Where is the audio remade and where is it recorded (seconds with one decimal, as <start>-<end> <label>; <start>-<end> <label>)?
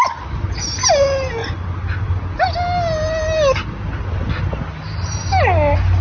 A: 0.0-6.0 recorded